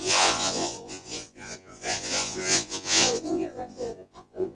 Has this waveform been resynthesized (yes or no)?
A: yes